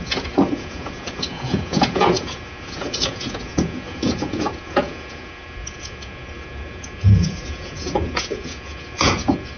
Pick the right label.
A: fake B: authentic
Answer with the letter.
A